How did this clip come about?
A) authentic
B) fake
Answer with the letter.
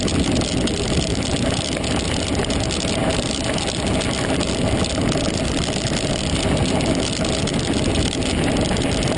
A